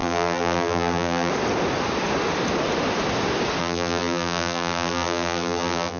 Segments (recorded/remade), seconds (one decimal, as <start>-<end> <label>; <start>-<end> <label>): 0.0-1.3 remade; 1.3-3.6 recorded; 3.6-6.0 remade